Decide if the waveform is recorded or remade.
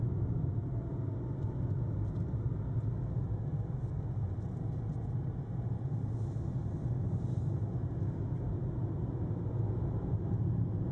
recorded